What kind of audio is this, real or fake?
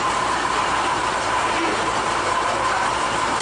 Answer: fake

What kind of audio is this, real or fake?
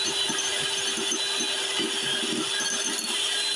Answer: real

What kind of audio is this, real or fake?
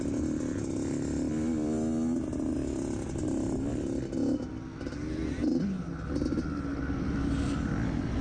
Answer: real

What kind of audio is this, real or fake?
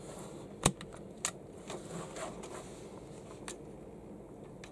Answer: real